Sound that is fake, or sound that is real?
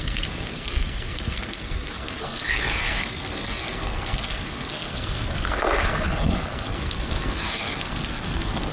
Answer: fake